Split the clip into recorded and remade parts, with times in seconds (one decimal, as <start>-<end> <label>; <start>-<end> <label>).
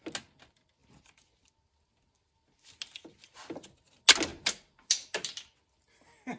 0.0-6.4 recorded